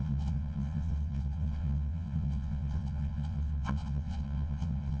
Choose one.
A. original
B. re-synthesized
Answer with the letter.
B